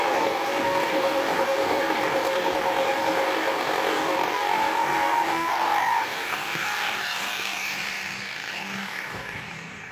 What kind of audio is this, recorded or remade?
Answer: remade